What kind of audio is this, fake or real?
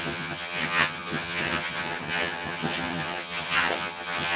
fake